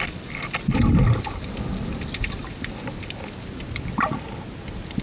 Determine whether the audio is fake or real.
real